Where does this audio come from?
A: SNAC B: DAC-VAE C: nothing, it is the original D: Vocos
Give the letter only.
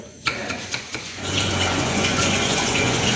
D